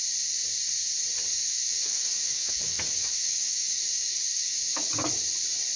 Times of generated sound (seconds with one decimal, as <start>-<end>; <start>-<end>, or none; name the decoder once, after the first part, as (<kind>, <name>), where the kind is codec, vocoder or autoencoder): 1.4-4.9 (autoencoder, DAC-VAE)